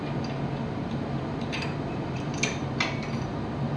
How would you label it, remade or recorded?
recorded